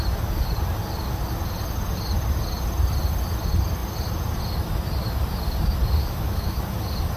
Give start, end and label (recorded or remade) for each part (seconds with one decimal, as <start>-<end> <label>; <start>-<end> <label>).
0.0-6.0 recorded; 6.0-6.6 remade; 6.6-7.2 recorded